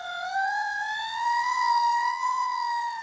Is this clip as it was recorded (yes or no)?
no